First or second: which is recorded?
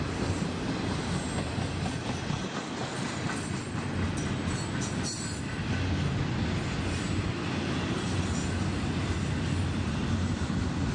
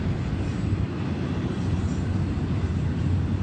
first